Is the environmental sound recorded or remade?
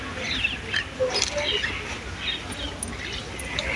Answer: recorded